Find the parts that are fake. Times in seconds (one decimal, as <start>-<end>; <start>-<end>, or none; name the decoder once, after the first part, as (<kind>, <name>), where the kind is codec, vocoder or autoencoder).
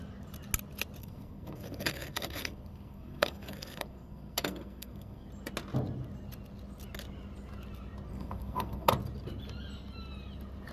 1.0-5.3 (codec, SNAC); 8.1-8.9